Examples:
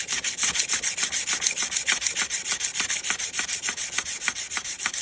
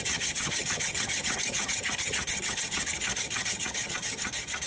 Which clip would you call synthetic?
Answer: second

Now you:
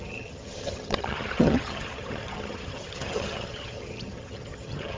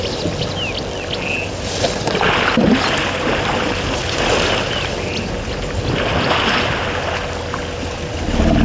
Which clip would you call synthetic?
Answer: first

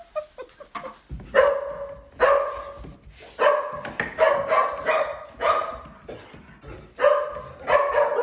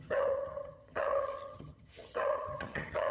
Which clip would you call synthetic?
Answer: second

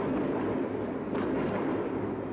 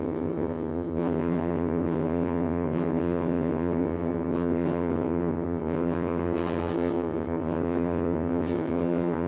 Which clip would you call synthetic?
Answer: second